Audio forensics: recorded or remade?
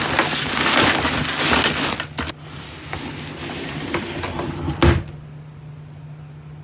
recorded